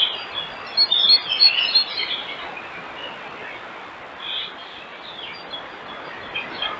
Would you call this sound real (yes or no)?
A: yes